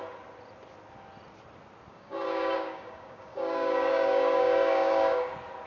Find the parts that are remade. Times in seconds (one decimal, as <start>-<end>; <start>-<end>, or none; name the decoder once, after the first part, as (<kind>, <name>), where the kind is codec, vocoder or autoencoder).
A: 1.9-5.3 (codec, DAC)